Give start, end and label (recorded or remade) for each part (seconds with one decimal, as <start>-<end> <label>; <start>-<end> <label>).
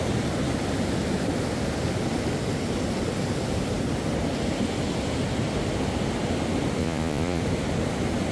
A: 0.0-6.8 recorded; 6.8-7.4 remade; 7.4-8.3 recorded